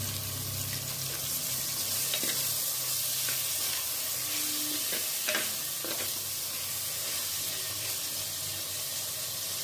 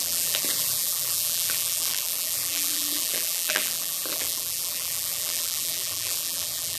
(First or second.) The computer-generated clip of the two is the second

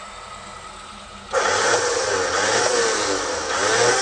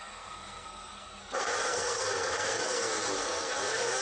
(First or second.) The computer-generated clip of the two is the second